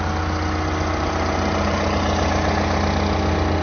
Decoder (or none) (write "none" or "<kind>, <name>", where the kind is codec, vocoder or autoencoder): none